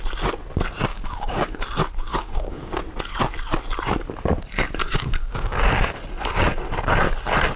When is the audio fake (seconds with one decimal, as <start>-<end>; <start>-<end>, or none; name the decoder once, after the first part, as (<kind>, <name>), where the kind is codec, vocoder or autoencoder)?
0.9-1.6 (codec, DAC); 2.1-2.8; 4.8-5.6